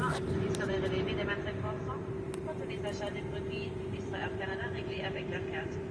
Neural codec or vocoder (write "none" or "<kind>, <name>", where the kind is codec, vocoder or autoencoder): vocoder, BigVGAN v2